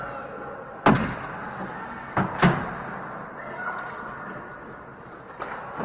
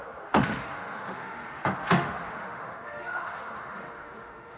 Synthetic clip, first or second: second